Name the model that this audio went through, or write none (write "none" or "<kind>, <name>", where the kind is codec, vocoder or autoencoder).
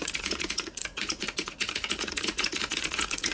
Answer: vocoder, Vocos